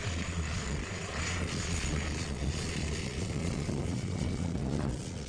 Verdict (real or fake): fake